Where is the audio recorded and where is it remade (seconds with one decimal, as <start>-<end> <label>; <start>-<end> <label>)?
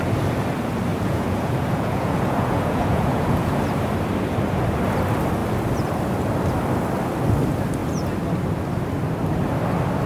0.0-0.9 recorded; 0.9-3.5 remade; 3.5-10.1 recorded